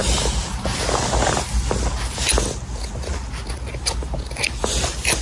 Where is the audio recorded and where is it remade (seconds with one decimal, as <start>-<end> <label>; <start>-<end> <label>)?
0.0-5.2 recorded